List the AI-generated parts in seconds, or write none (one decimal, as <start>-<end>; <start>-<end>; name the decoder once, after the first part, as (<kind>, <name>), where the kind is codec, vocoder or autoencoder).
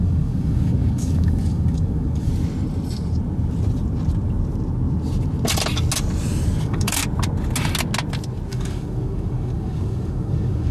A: 0.0-2.3 (codec, DAC); 6.6-7.0; 8.5-10.7